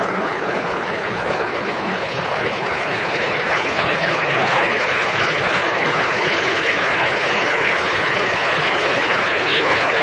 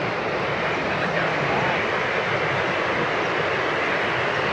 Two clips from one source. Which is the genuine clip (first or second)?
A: second